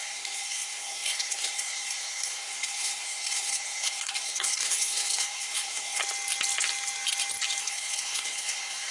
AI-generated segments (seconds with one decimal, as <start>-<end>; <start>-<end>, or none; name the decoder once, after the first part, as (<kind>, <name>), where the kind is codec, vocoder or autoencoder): 0.0-6.0 (codec, SNAC); 7.6-8.9